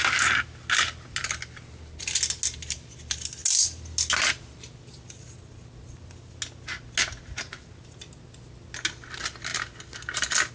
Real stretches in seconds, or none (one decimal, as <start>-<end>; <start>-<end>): 0.0-10.5